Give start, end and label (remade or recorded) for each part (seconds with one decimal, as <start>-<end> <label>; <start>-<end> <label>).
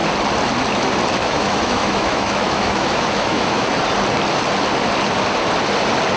0.0-1.2 recorded; 1.2-3.7 remade; 3.7-6.2 recorded